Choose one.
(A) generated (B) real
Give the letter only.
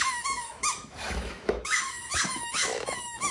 A